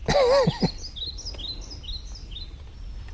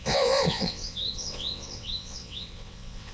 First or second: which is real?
first